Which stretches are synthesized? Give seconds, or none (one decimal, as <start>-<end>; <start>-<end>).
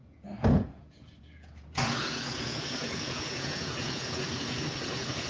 0.0-5.3